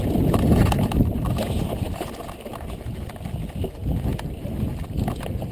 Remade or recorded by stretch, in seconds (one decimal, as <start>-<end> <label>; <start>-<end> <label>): 0.0-5.5 recorded